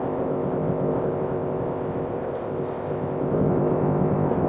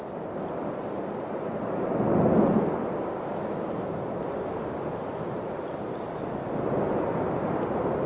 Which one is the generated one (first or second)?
first